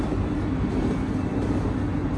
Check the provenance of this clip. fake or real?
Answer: real